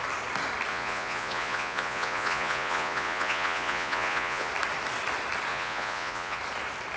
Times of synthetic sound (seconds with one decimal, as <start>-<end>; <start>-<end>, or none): 0.7-4.5; 5.5-6.4